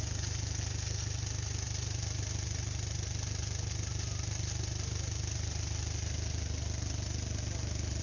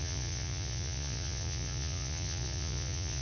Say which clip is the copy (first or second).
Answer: second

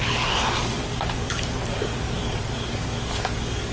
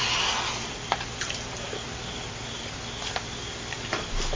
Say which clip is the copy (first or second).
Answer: first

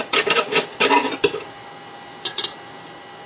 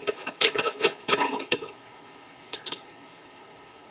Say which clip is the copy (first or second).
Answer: second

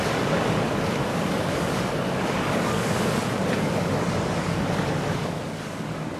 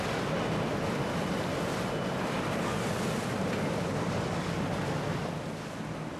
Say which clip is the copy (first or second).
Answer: first